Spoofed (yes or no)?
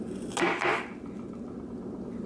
no